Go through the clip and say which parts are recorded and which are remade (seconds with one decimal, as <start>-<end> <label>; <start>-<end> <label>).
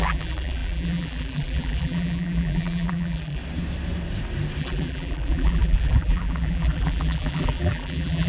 0.0-3.4 remade; 3.4-4.6 recorded; 4.6-8.3 remade